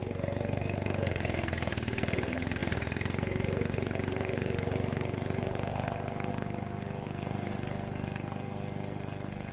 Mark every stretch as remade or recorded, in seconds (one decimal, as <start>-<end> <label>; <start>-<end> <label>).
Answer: 0.0-9.5 remade